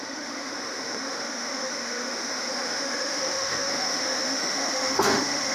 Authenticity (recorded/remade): remade